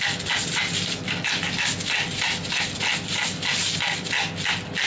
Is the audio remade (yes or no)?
no